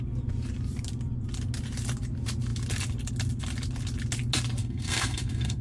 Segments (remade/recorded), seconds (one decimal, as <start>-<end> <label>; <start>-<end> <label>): 0.0-4.6 recorded; 4.6-5.6 remade